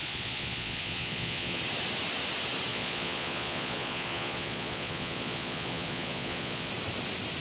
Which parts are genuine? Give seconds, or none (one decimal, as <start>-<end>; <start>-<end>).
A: 1.6-2.7; 6.7-7.4